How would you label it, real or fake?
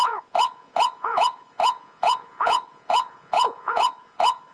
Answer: fake